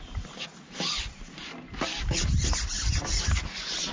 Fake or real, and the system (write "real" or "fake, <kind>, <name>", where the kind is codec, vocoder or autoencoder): real